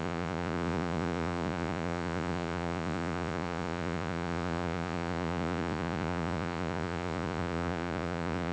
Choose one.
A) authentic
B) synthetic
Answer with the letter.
B